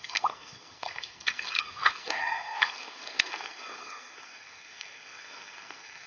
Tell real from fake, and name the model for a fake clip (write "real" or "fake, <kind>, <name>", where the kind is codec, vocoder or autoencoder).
fake, codec, SNAC